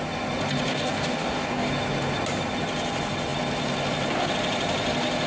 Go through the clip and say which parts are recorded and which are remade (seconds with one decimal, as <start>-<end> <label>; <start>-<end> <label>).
0.0-0.7 recorded; 0.7-1.7 remade; 1.7-5.3 recorded